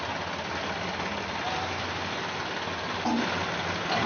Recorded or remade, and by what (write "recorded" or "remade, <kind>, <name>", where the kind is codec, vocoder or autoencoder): recorded